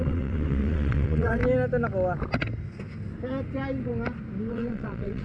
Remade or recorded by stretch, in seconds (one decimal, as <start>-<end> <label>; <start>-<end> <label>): 0.0-1.4 remade; 1.4-4.5 recorded; 4.5-5.2 remade